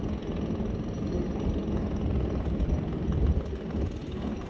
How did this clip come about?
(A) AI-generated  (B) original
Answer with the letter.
B